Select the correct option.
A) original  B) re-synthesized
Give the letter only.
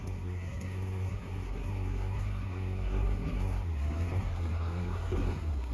B